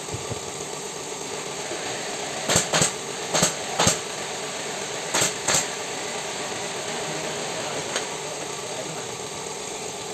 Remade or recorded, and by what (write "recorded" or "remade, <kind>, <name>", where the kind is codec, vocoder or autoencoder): recorded